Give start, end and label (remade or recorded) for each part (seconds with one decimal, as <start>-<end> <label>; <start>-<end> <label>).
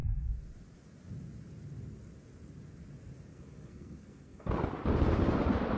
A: 0.0-3.3 recorded; 3.3-4.5 remade; 4.5-5.8 recorded